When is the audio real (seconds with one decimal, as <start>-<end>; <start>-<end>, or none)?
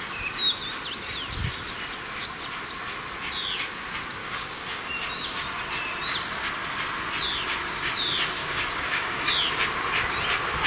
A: 0.0-4.2; 4.9-8.4; 9.3-10.7